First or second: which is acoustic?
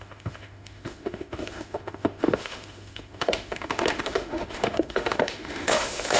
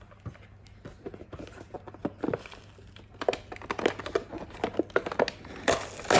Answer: second